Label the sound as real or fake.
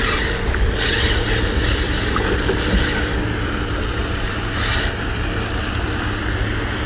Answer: real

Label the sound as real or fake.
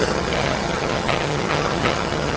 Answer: fake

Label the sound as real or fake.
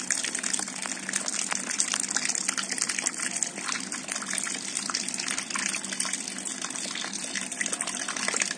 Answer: real